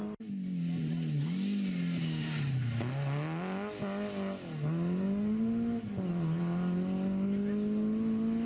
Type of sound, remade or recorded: recorded